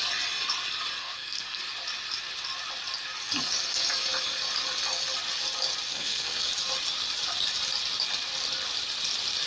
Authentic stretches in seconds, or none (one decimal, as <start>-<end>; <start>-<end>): 0.0-1.0; 1.6-5.9; 6.5-9.5